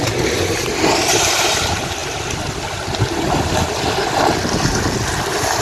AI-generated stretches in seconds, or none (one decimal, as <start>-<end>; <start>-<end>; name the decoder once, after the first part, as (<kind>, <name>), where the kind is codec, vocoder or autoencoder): none